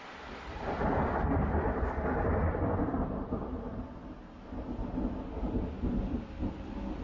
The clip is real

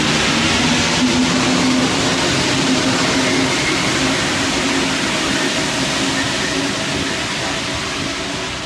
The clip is real